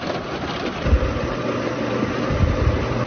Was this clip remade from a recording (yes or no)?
no